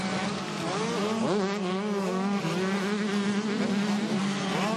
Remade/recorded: recorded